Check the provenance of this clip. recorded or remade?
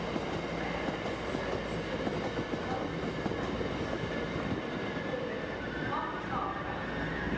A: recorded